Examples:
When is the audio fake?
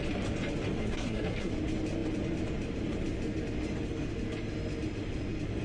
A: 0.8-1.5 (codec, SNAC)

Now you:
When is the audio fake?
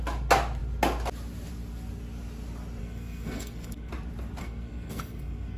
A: 2.8-3.9 (codec, SNAC); 4.4-5.6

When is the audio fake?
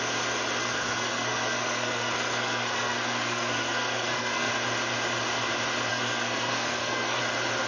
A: 0.6-4.5 (codec, SNAC); 5.9-7.2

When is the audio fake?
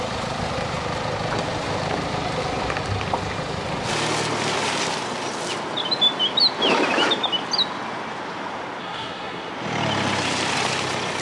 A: 8.8-9.5 (codec, SNAC)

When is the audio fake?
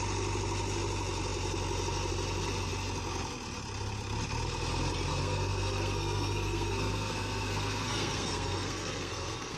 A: 5.1-9.6 (codec, SNAC)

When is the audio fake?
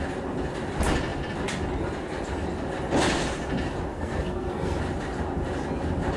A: 3.9-4.8 (codec, SNAC)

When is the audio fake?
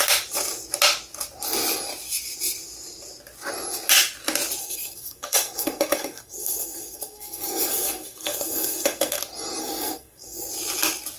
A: 4.6-9.2 (codec, SNAC); 9.6-10.5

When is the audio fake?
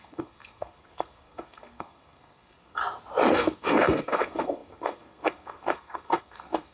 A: 0.0-2.8 (codec, SNAC); 3.3-6.7